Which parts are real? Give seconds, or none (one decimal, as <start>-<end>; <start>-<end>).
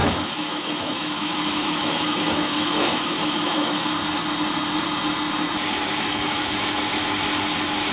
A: 4.0-5.9; 6.6-7.9